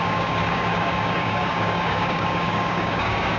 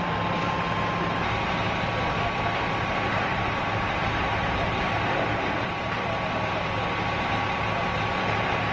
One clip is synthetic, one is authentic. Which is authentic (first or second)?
second